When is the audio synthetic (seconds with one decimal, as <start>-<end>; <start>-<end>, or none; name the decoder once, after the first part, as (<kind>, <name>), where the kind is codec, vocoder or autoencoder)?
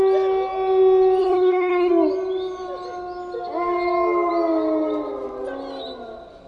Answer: 1.2-1.9 (codec, SNAC)